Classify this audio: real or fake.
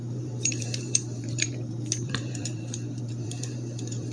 fake